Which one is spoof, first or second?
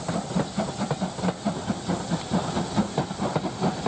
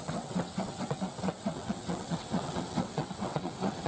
second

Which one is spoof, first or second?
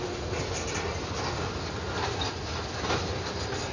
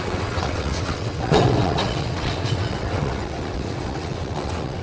second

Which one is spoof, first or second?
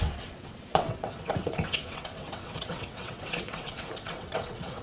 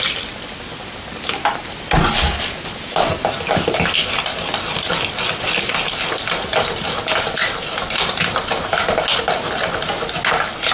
first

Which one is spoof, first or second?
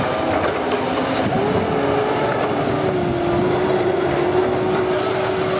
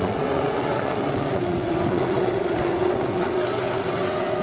second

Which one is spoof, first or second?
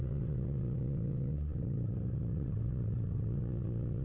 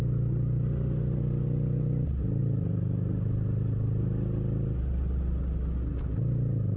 first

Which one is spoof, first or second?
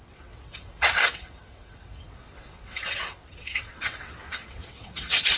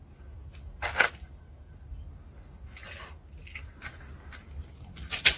first